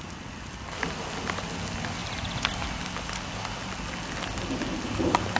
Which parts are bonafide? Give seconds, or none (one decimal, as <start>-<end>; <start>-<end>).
0.0-5.4

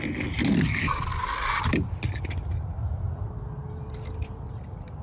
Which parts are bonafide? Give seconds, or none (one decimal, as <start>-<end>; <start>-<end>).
0.0-5.0

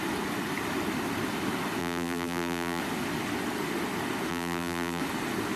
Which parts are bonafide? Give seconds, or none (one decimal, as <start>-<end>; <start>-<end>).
0.0-1.8; 2.8-4.3; 5.0-5.6

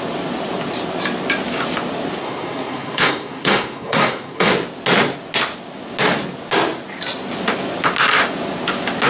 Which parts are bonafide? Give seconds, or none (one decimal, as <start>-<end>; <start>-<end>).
0.0-2.2; 4.5-9.1

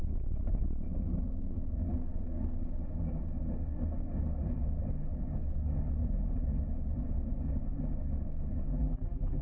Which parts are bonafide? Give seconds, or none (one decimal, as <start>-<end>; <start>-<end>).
0.0-8.7

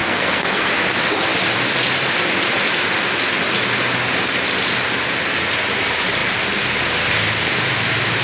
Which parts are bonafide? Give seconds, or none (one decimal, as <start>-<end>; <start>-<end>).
0.7-8.2